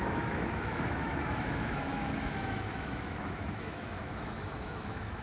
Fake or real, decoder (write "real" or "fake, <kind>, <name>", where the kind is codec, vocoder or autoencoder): fake, autoencoder, DAC-VAE